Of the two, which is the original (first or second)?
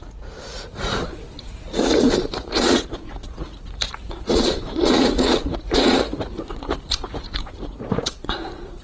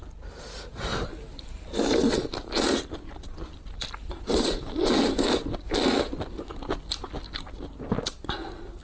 second